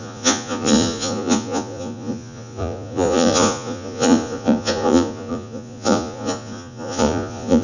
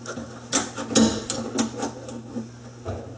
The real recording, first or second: second